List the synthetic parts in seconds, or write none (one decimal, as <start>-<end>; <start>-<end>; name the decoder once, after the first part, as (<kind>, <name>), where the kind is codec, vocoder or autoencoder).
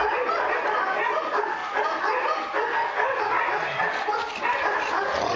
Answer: none